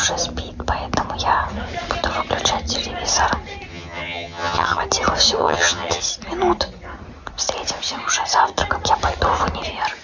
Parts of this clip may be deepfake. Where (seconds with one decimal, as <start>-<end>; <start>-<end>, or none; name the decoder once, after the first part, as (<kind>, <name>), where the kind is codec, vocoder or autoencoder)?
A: 3.7-4.8 (vocoder, HiFi-GAN); 5.4-6.0

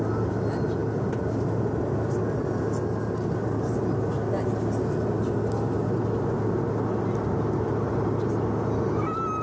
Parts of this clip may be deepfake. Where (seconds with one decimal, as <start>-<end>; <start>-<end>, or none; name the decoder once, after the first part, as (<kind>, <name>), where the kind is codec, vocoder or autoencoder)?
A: none